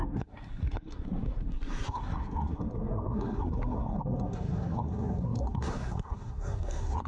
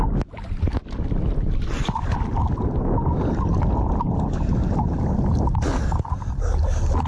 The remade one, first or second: first